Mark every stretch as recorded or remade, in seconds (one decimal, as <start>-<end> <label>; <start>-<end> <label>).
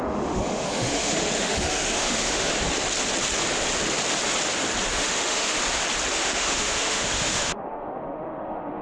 0.0-2.5 remade; 2.5-4.9 recorded; 4.9-5.6 remade; 5.6-6.1 recorded; 6.1-8.8 remade